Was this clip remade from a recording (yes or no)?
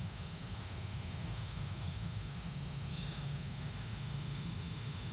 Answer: yes